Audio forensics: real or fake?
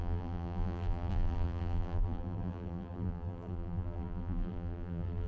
fake